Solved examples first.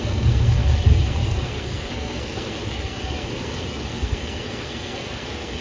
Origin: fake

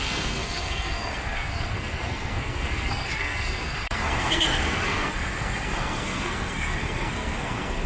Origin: fake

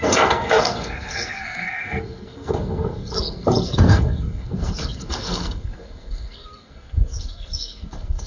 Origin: fake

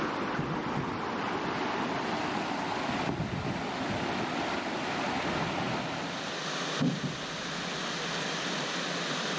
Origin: real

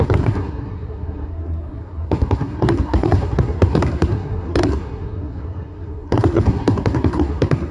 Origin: fake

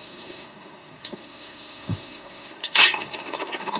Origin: fake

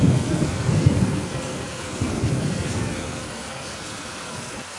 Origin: fake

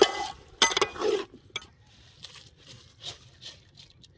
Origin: real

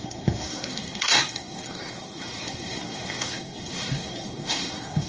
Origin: fake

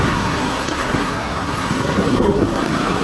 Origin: fake